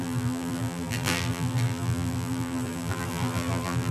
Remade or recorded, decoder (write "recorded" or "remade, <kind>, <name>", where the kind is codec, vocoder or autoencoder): remade, vocoder, BigVGAN v2